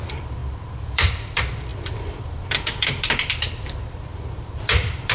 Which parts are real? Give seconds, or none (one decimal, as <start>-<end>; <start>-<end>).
none